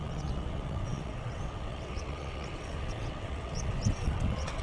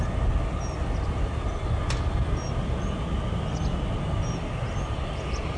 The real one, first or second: second